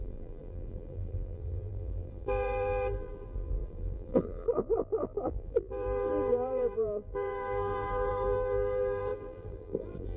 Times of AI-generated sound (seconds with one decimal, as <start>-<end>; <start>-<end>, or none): 0.0-10.2